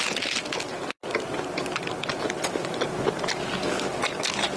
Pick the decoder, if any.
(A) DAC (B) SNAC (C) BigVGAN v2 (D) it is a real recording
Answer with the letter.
D